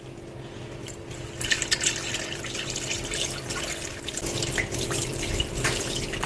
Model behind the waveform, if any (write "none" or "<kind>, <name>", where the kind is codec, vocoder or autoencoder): none